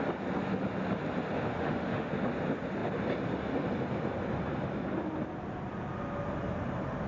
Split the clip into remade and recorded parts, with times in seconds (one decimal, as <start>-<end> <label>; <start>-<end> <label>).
0.0-1.5 recorded; 1.5-2.1 remade; 2.1-7.1 recorded